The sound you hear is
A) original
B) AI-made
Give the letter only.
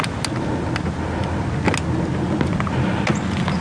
A